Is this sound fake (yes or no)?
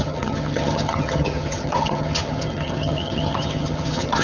yes